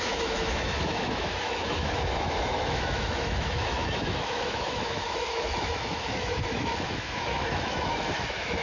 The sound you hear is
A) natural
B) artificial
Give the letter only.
B